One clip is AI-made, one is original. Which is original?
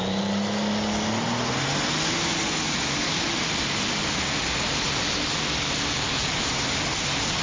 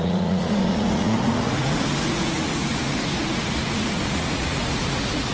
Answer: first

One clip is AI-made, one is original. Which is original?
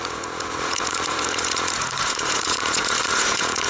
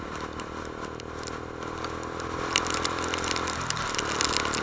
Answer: second